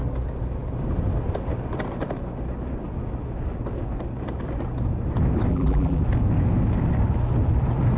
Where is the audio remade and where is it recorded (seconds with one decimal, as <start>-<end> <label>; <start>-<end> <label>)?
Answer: 0.0-5.5 recorded; 5.5-6.0 remade; 6.0-8.0 recorded